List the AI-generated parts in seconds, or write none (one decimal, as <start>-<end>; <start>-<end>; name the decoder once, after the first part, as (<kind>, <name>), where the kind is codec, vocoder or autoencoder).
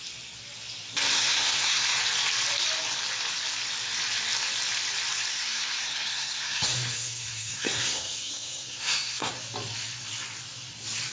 1.1-2.0 (codec, SNAC); 5.3-9.3